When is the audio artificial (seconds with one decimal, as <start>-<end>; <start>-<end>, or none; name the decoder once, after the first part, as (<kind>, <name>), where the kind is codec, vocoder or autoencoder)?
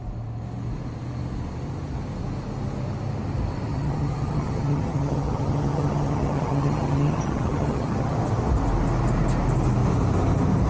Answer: 3.7-8.1 (vocoder, HiFi-GAN)